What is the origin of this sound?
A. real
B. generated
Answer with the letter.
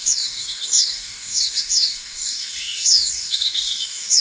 B